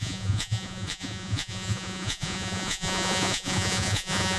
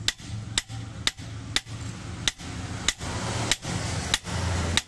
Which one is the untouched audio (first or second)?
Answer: second